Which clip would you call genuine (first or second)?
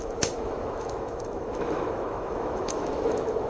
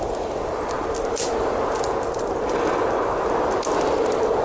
second